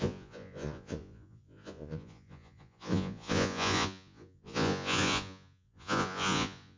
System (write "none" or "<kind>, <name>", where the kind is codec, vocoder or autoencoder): vocoder, Vocos